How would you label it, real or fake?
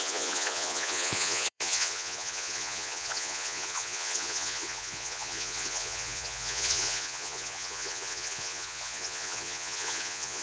fake